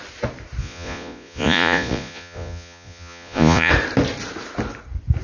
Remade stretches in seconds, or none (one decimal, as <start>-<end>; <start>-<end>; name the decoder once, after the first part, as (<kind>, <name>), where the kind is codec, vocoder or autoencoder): 0.6-3.7 (vocoder, Vocos)